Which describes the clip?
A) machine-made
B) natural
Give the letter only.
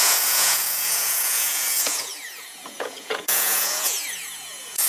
A